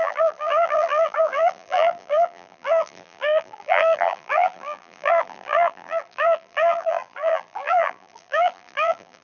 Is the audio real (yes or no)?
no